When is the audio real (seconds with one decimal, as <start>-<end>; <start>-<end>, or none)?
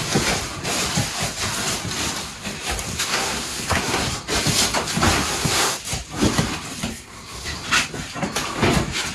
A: 0.0-2.9; 4.2-5.1; 5.8-6.9; 7.6-9.1